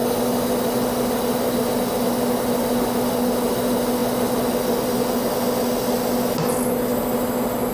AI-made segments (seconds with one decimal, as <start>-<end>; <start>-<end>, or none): none